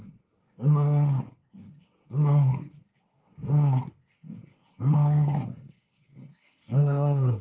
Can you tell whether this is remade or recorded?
remade